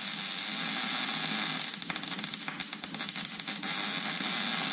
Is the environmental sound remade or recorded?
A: recorded